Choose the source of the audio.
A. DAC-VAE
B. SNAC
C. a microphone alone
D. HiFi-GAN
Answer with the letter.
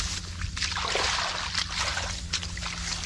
C